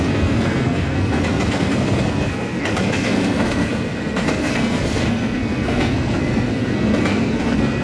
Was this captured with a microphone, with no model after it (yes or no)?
no